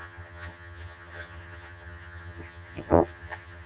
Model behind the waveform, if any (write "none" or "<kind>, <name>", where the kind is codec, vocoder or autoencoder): vocoder, HiFi-GAN